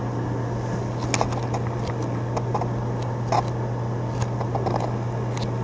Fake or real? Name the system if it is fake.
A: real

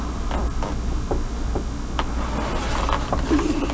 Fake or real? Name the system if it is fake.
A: real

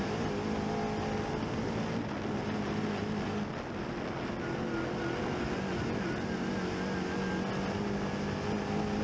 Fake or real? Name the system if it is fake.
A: real